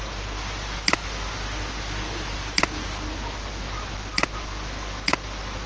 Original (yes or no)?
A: yes